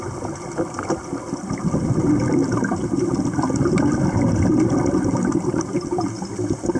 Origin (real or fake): real